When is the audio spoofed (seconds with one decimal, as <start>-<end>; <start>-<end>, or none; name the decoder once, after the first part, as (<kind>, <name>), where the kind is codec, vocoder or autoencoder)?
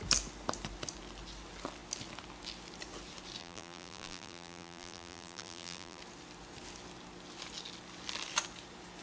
3.4-6.0 (vocoder, BigVGAN v2)